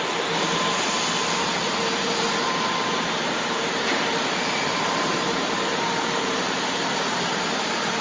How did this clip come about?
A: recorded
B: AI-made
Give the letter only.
B